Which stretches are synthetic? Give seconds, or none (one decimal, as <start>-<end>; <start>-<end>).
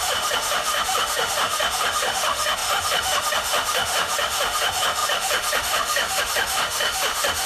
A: 0.0-7.5